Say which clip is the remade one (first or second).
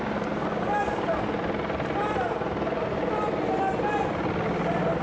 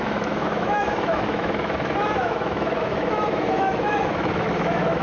second